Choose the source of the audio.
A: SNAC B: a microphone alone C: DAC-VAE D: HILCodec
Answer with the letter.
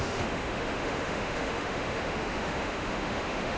C